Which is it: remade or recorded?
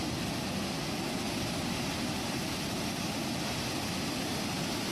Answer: recorded